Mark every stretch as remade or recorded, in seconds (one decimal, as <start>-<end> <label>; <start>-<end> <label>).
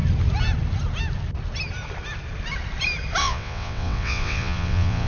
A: 0.0-3.2 recorded; 3.2-5.1 remade